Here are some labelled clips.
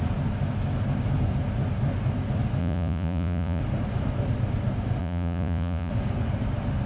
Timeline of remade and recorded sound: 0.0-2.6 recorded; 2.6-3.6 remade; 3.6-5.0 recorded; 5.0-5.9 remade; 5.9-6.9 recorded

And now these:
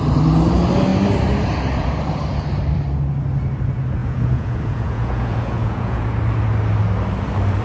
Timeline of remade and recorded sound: 0.0-4.0 recorded; 4.0-6.0 remade; 6.0-7.6 recorded

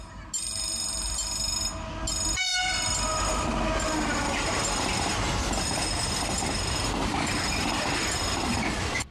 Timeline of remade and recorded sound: 0.0-9.1 recorded

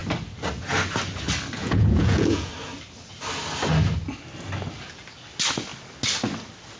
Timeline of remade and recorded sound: 0.0-1.6 recorded; 1.6-2.5 remade; 2.5-6.8 recorded

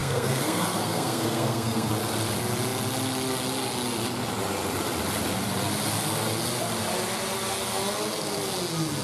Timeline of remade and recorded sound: 0.0-1.9 remade; 1.9-9.0 recorded